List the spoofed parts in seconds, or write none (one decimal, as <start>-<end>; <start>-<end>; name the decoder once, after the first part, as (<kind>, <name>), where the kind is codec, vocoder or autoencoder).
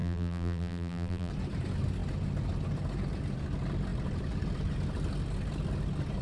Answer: 0.0-1.3 (vocoder, BigVGAN v2)